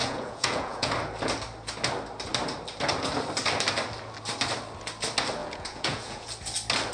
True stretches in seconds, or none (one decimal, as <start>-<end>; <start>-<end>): 0.9-5.4; 6.3-6.9